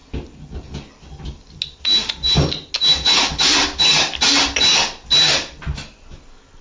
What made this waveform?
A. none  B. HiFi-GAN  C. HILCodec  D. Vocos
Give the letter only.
A